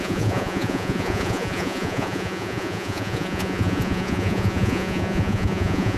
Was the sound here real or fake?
fake